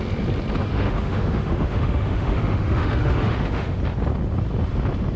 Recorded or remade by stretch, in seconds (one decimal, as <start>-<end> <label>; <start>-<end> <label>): 0.0-0.7 recorded; 0.7-3.8 remade; 3.8-5.2 recorded